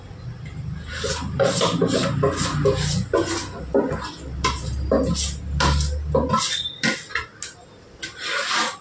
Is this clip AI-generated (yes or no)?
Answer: no